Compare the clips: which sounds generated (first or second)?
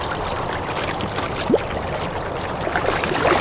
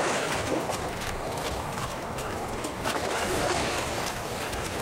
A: second